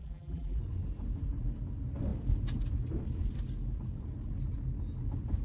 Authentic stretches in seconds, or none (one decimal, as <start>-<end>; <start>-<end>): 0.6-5.4